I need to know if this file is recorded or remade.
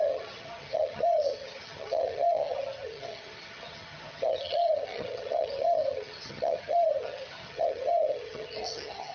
remade